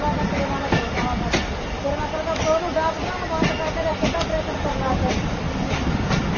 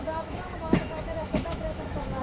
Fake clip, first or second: second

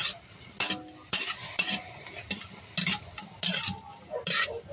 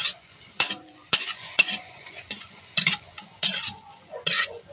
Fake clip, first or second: second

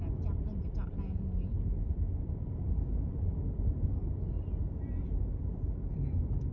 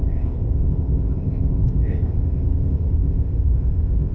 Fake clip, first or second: second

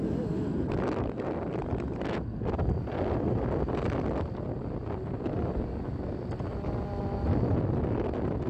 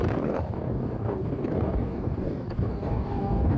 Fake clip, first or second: second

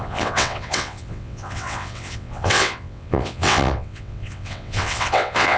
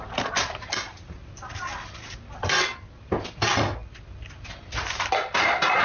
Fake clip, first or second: first